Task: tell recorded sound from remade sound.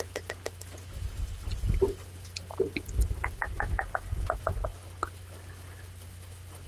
recorded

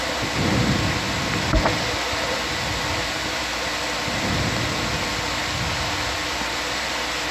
recorded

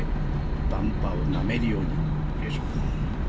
remade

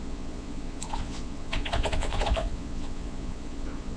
remade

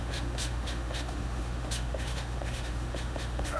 remade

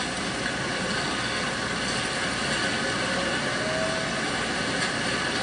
recorded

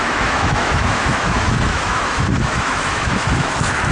remade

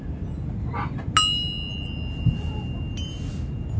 recorded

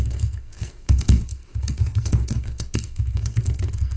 remade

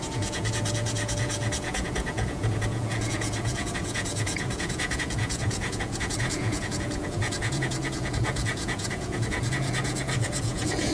remade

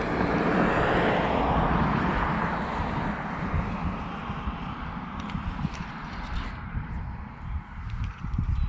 remade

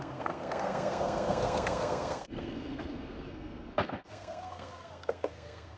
remade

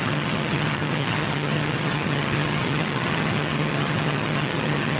remade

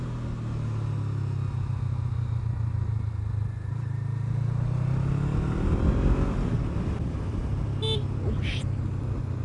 recorded